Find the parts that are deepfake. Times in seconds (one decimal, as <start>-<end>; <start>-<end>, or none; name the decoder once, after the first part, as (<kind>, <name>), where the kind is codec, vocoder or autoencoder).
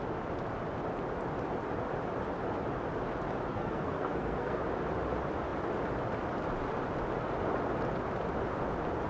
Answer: 3.5-4.6 (codec, SNAC)